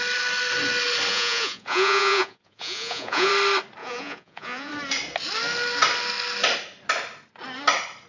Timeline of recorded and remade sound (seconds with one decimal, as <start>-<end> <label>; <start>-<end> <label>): 0.0-1.1 recorded; 1.1-3.3 remade; 3.3-3.8 recorded; 3.8-4.7 remade; 4.7-8.1 recorded